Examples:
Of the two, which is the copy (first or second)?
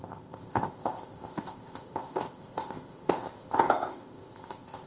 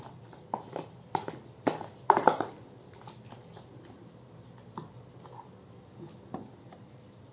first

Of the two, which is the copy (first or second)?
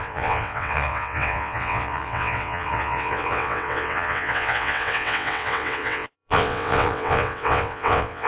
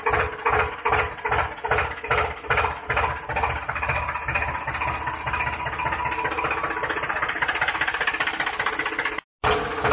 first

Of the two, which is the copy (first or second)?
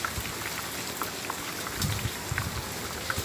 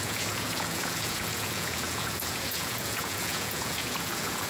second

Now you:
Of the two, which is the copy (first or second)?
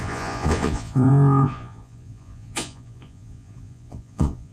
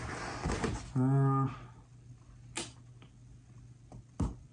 first